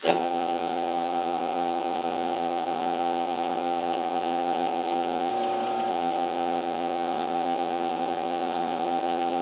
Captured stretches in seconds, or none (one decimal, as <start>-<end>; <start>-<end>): 5.3-5.9